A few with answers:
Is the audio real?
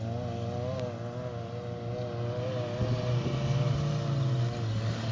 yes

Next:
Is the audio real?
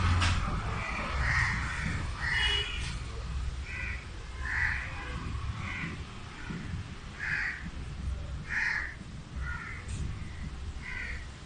yes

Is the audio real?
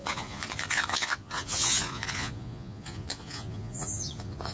no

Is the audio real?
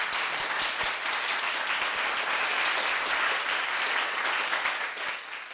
yes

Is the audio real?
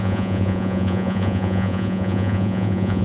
no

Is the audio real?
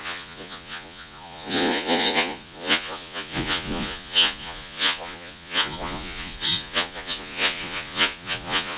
no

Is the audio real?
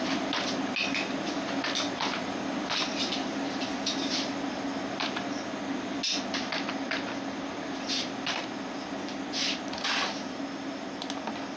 yes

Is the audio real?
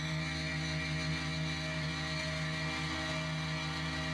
yes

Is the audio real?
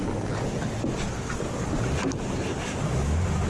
yes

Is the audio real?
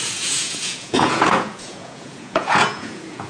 no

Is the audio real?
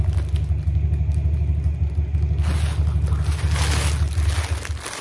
yes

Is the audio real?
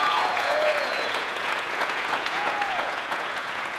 no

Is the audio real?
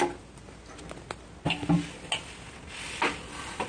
yes